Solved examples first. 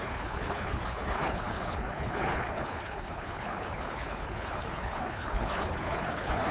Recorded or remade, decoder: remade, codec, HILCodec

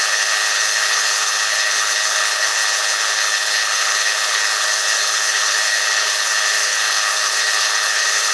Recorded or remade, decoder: remade, codec, HILCodec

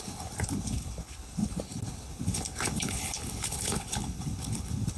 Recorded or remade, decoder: remade, codec, HILCodec